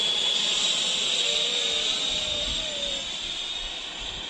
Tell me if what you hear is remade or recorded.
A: recorded